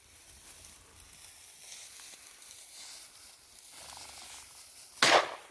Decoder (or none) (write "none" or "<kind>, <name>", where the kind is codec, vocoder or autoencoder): none